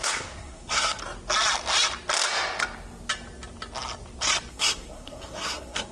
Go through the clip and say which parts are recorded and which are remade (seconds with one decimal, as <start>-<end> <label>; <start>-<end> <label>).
0.0-1.0 remade; 1.0-4.5 recorded; 4.5-5.9 remade